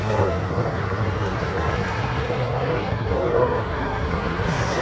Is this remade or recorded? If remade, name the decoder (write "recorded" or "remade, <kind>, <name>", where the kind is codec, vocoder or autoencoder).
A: remade, codec, SNAC